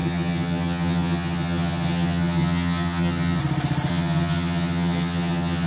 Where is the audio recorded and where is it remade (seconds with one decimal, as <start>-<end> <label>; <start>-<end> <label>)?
0.0-3.4 remade; 3.4-3.9 recorded; 3.9-5.7 remade